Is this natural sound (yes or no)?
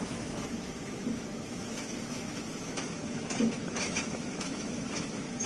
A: no